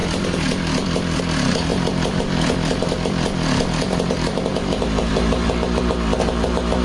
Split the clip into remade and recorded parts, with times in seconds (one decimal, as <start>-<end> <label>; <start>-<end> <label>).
0.0-1.2 remade; 1.2-1.7 recorded; 1.7-5.8 remade; 5.8-6.8 recorded